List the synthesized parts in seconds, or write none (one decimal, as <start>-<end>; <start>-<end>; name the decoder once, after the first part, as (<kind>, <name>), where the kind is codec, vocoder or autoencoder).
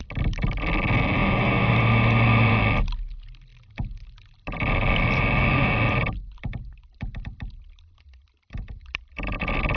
none